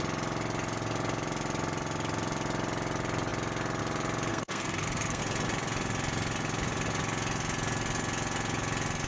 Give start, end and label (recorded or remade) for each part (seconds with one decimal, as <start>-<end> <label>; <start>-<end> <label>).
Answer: 0.0-4.3 recorded; 4.3-5.2 remade; 5.2-9.1 recorded

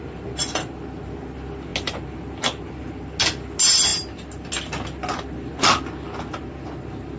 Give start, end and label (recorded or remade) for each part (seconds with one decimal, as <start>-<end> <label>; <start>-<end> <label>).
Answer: 0.0-7.2 recorded

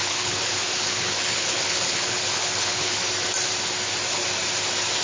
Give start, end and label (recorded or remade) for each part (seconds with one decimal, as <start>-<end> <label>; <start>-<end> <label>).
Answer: 0.0-3.0 remade; 3.0-5.0 recorded

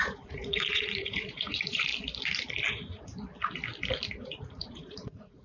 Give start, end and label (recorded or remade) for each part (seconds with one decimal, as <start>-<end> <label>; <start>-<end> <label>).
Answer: 0.0-1.9 remade; 1.9-2.7 recorded; 2.7-3.1 remade; 3.1-4.2 recorded; 4.2-5.4 remade

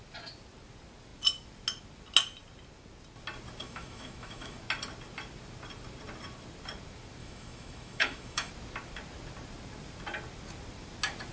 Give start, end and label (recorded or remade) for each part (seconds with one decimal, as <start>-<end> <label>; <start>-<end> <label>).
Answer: 0.0-3.6 recorded; 3.6-4.6 remade; 4.6-7.2 recorded; 7.2-8.5 remade; 8.5-11.3 recorded

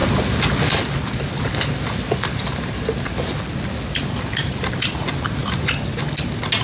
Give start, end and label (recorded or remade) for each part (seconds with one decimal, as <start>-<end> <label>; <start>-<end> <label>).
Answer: 0.0-5.4 recorded; 5.4-6.0 remade; 6.0-6.6 recorded

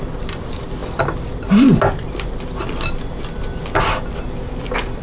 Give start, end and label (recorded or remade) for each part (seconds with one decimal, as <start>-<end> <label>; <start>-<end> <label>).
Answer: 0.0-5.0 recorded

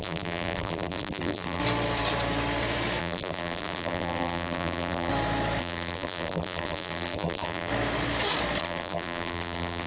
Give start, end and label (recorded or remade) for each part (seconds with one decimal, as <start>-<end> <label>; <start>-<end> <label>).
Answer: 0.0-1.6 remade; 1.6-3.0 recorded; 3.0-5.1 remade; 5.1-5.6 recorded; 5.6-7.7 remade; 7.7-8.6 recorded; 8.6-9.9 remade